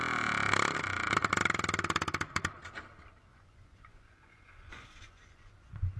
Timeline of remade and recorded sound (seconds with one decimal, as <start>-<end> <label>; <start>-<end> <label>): 0.0-3.3 recorded; 3.3-6.0 remade